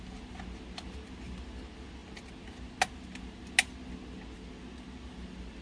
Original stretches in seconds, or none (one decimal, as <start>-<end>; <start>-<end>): 0.0-5.6